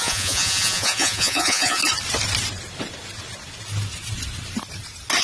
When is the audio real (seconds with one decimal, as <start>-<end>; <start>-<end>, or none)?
1.8-5.2